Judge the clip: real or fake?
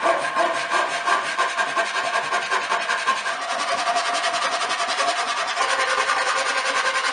fake